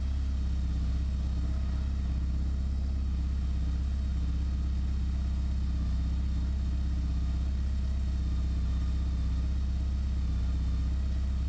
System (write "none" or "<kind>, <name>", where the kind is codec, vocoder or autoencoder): none